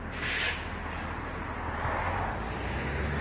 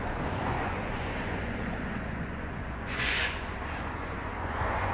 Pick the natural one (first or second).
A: first